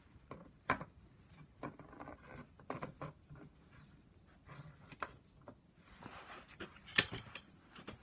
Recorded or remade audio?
recorded